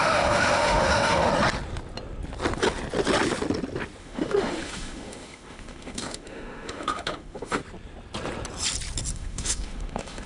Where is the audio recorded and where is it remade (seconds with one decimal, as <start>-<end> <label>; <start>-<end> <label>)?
0.0-1.3 remade; 1.3-4.0 recorded; 4.0-7.6 remade; 7.6-9.1 recorded; 9.1-10.3 remade